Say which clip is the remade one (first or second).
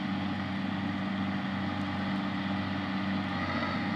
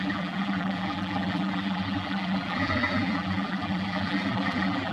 second